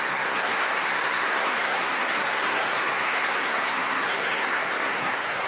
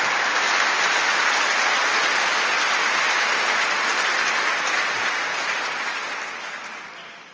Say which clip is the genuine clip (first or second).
second